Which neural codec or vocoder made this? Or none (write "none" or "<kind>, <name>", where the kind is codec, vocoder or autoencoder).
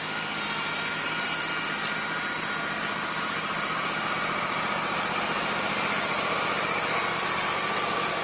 none